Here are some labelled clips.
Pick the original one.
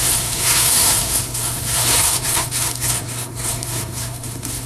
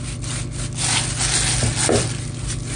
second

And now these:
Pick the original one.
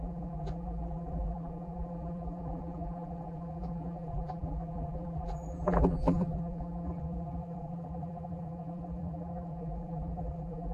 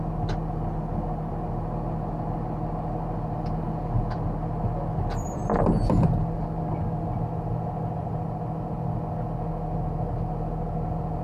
second